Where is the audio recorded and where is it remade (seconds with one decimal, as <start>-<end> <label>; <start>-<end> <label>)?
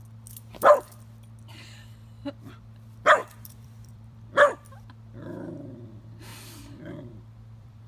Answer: 0.0-3.2 recorded; 3.2-4.7 remade; 4.7-6.3 recorded; 6.3-7.9 remade